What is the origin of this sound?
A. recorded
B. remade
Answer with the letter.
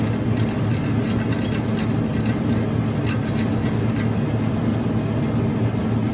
A